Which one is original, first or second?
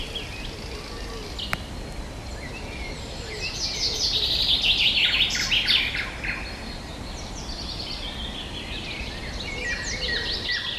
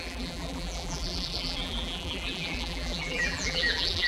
first